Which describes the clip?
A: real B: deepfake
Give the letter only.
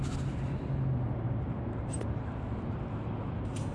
A